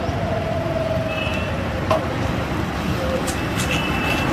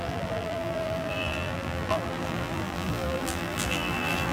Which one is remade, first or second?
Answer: second